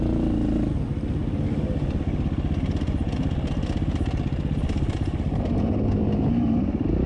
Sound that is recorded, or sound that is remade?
recorded